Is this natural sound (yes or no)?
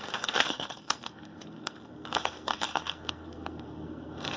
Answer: no